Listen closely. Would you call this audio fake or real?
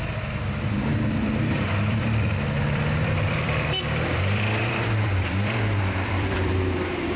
fake